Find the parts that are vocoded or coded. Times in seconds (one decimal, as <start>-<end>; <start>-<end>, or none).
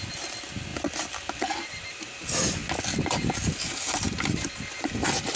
none